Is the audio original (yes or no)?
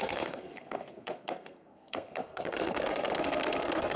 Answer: no